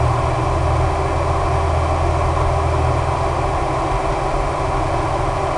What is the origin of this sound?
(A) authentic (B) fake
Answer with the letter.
A